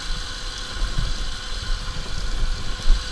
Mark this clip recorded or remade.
recorded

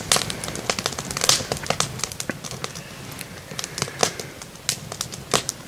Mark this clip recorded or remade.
recorded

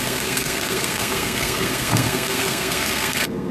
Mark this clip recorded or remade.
remade